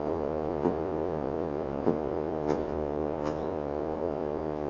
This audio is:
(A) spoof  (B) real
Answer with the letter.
A